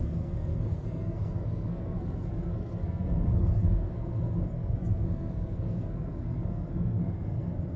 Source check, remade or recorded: remade